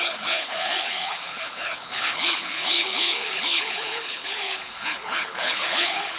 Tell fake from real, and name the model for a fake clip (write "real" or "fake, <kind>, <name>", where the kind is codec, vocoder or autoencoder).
fake, codec, HILCodec